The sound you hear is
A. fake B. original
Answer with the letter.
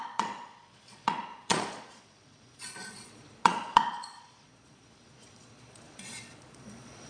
A